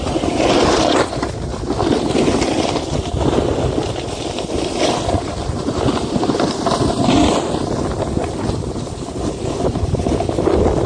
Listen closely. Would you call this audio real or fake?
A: real